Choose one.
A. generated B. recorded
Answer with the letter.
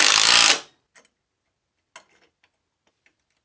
B